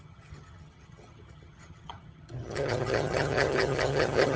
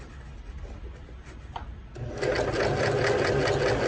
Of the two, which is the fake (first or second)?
first